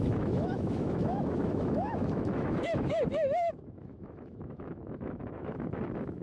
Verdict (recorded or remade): remade